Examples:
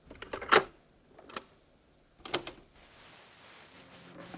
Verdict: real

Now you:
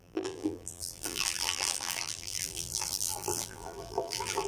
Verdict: fake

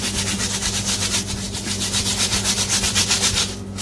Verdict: real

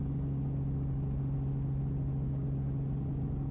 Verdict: real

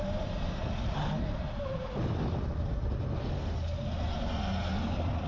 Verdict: real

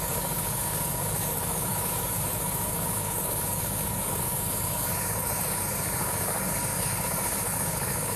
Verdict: fake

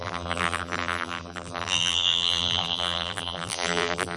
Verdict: fake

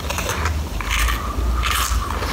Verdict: real